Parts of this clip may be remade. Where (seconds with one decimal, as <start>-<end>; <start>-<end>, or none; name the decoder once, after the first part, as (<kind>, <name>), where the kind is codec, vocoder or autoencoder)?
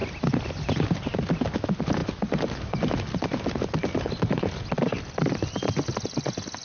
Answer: none